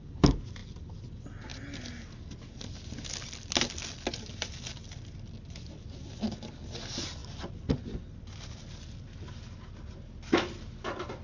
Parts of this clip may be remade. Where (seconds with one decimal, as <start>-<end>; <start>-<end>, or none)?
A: none